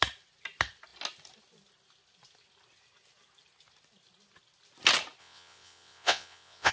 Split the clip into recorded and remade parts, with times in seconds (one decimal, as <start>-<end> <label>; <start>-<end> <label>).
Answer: 0.0-5.2 recorded; 5.2-6.7 remade